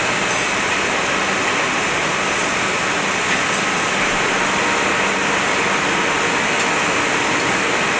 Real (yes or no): yes